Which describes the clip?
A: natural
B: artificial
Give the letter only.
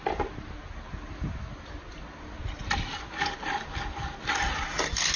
A